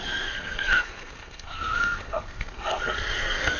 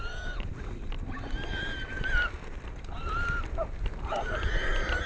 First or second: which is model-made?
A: first